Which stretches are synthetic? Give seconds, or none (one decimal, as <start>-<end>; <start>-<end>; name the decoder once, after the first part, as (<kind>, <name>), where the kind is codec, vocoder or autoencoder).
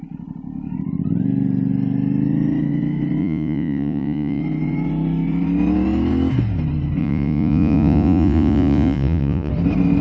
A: 3.2-4.4 (vocoder, Vocos); 7.0-9.5